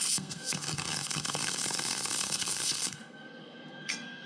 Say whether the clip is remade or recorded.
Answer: remade